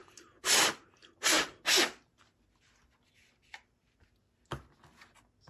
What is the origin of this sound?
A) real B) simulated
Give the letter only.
A